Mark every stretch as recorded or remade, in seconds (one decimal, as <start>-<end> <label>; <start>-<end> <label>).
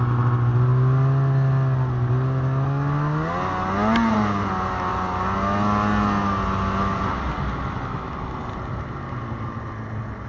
0.0-10.3 recorded